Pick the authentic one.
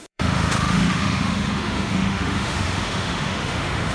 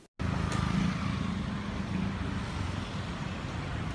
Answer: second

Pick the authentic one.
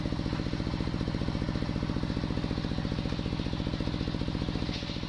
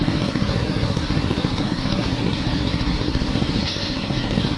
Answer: first